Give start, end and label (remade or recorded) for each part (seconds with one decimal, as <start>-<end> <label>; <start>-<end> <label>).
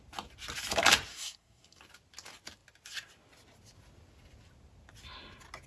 0.0-1.1 recorded; 1.1-1.8 remade; 1.8-5.7 recorded